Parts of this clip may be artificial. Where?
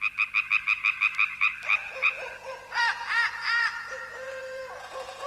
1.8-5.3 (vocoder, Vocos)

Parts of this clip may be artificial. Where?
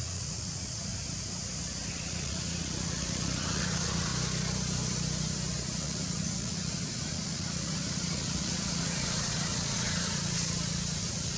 0.0-0.9 (vocoder, Vocos); 1.9-4.1; 5.8-11.4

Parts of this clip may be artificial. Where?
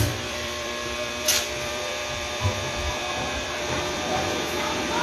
0.0-5.0 (vocoder, BigVGAN v2)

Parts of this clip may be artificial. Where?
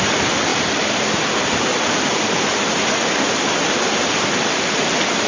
none